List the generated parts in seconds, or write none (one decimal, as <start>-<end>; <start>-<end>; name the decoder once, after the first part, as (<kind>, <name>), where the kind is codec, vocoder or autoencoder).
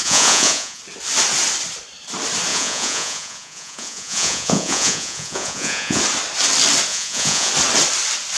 0.0-0.8 (vocoder, Vocos); 2.5-6.0; 6.9-7.5